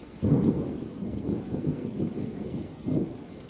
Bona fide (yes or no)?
no